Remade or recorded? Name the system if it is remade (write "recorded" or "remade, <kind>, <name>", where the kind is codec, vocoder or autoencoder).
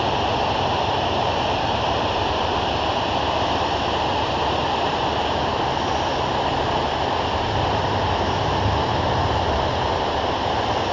recorded